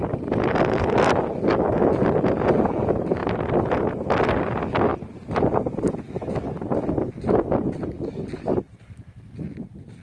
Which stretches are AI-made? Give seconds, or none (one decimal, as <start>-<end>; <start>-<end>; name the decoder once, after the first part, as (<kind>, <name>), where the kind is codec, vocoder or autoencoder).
none